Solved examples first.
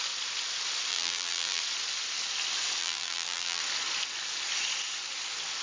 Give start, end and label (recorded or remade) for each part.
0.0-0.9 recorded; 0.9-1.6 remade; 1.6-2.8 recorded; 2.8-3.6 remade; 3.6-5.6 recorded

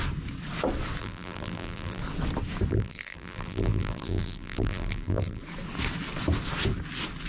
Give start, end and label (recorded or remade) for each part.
0.0-1.0 recorded; 1.0-2.0 remade; 2.0-2.7 recorded; 2.7-5.4 remade; 5.4-7.3 recorded